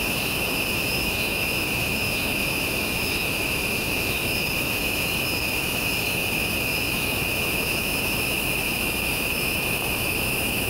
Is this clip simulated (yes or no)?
yes